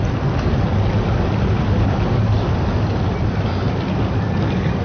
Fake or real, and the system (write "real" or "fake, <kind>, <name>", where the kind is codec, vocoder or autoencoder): real